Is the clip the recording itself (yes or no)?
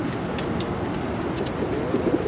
yes